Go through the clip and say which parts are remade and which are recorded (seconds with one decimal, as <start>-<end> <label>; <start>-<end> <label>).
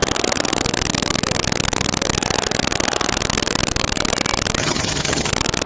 0.0-4.6 recorded; 4.6-5.3 remade; 5.3-5.7 recorded